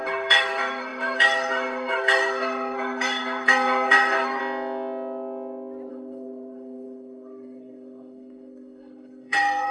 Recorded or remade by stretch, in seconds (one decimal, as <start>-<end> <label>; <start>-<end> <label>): 0.0-4.4 remade; 4.4-5.9 recorded; 5.9-9.7 remade